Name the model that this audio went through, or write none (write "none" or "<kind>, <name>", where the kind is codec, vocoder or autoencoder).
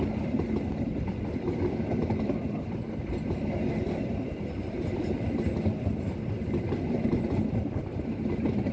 none